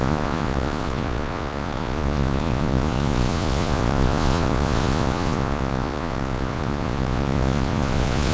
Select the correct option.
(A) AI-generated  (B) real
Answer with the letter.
A